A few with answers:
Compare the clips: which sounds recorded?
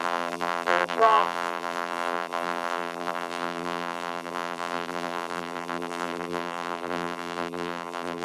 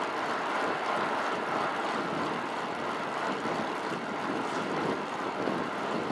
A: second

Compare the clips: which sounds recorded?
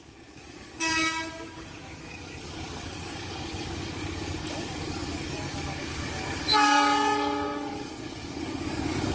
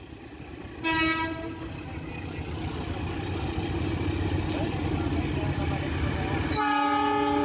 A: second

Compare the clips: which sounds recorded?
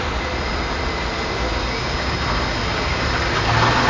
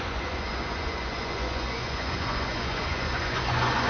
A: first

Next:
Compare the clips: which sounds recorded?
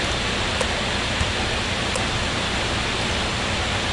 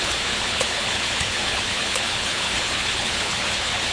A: first